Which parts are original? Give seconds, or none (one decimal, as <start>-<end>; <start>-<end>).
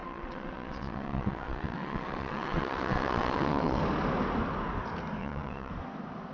3.8-5.2; 5.7-6.3